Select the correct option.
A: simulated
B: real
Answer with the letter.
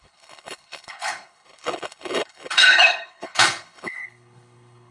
A